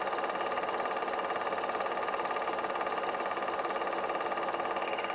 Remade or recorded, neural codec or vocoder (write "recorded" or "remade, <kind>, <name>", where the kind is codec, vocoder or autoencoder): recorded